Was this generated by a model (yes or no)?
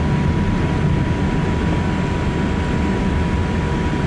no